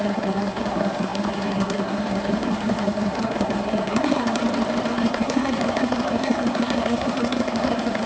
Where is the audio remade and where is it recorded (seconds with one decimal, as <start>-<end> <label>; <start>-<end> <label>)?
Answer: 0.0-4.4 remade; 4.4-4.9 recorded; 4.9-8.1 remade